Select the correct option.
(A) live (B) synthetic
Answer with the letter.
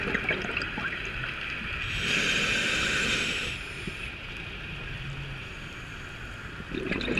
A